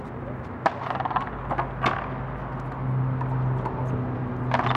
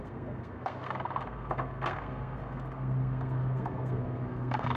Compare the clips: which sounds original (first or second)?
first